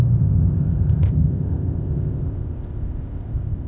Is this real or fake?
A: fake